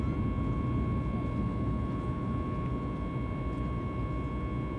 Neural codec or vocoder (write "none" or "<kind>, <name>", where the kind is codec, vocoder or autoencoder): none